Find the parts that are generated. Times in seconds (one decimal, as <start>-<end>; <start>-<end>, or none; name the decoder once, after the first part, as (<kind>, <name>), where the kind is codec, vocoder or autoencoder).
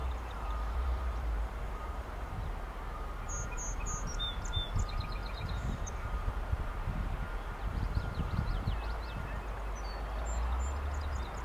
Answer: 0.0-2.3 (vocoder, BigVGAN v2); 5.2-6.3; 7.7-8.5